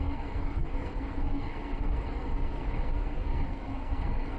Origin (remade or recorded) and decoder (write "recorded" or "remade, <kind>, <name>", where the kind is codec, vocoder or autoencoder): remade, codec, SNAC